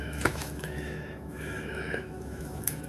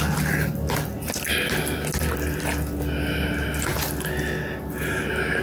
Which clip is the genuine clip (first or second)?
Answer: second